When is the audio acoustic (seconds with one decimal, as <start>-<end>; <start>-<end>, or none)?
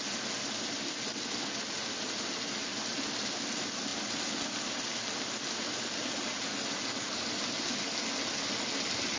0.0-9.2